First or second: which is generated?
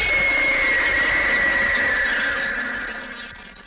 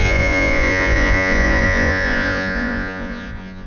second